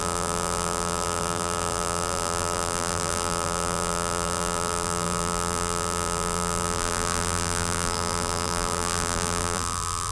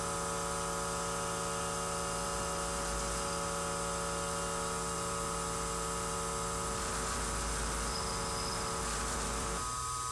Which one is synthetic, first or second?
first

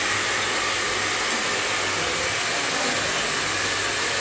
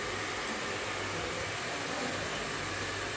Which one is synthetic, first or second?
second